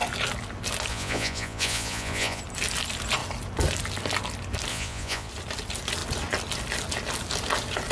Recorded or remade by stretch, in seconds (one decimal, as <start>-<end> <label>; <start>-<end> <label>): 0.0-0.9 recorded; 0.9-2.4 remade; 2.4-4.7 recorded; 4.7-5.3 remade; 5.3-7.9 recorded